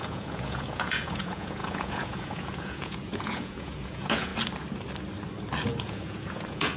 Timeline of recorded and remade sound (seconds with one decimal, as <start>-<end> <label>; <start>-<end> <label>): 0.0-4.3 remade; 4.3-5.8 recorded; 5.8-6.8 remade